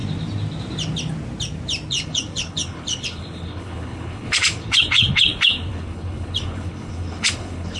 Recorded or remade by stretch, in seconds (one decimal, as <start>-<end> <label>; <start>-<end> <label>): 0.0-1.9 recorded; 1.9-7.8 remade